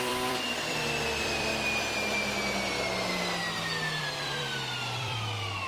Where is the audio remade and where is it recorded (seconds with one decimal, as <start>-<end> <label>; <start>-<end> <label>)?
0.0-1.5 remade; 1.5-4.0 recorded; 4.0-5.7 remade